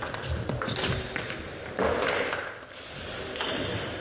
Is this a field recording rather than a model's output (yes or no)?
yes